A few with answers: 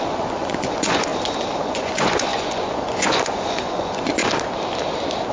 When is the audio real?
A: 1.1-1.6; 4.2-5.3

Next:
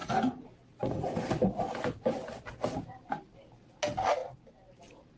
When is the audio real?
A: 0.0-5.2

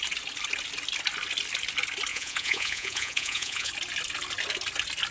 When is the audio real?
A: 0.0-2.1; 3.7-5.1